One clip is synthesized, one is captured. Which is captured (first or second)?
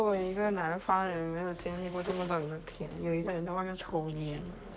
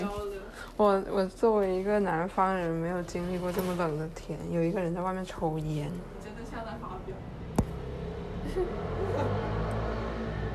second